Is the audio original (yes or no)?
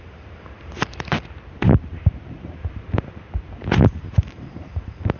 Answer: no